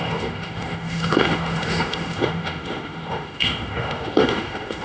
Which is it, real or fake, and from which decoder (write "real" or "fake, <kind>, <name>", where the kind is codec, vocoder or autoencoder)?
fake, autoencoder, DAC-VAE